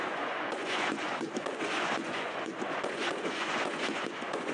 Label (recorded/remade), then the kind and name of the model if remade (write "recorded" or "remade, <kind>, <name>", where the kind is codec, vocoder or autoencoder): remade, vocoder, Vocos